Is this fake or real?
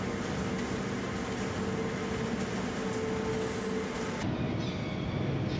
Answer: real